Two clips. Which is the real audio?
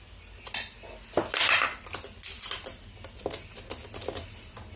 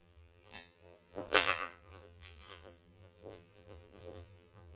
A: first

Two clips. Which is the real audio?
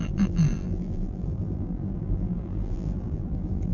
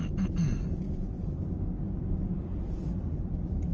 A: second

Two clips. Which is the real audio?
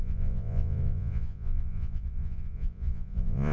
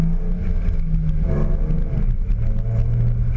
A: second